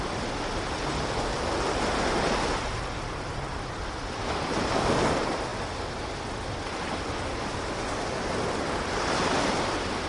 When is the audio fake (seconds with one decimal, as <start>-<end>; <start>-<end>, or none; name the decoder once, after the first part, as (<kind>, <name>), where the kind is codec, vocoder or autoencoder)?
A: none